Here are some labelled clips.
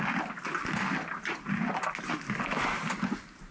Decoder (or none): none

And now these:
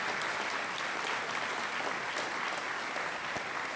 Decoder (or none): none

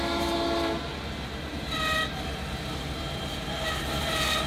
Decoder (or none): none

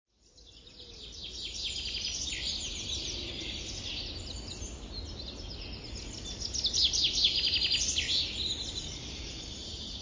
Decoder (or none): none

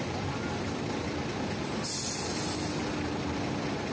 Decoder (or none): none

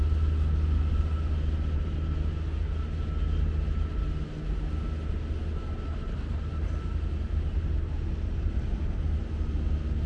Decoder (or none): none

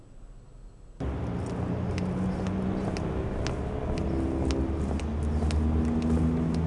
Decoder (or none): none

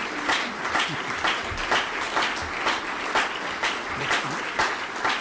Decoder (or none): none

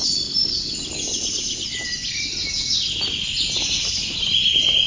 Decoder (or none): none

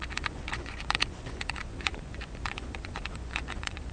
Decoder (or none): vocoder, Vocos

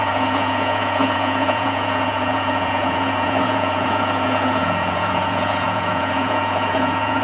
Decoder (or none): vocoder, Vocos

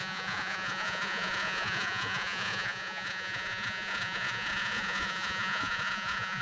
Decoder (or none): vocoder, Vocos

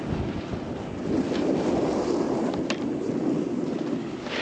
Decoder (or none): none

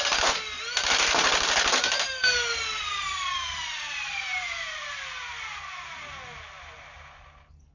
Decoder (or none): none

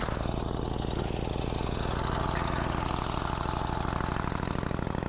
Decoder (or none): none